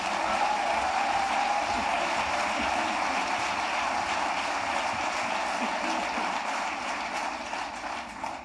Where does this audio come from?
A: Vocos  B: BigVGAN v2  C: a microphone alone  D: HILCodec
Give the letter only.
C